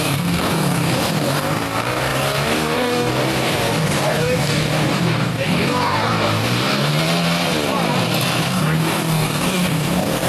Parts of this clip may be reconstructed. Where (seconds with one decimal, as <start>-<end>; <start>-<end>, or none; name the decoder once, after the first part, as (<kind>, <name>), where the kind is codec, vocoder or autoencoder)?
0.0-6.9 (codec, DAC); 8.4-10.3